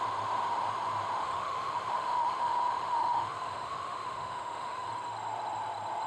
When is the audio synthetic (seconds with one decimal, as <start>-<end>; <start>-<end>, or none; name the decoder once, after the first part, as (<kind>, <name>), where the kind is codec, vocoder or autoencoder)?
1.2-4.9 (autoencoder, DAC-VAE)